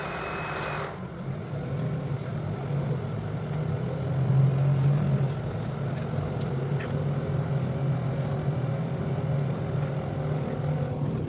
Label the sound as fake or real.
real